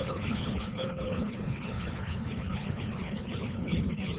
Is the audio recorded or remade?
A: remade